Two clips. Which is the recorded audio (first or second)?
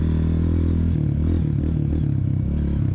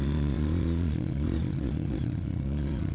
first